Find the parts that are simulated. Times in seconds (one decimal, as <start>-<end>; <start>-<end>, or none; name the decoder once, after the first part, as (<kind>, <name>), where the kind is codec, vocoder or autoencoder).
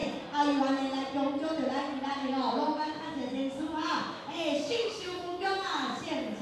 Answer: 2.2-6.0 (autoencoder, DAC-VAE)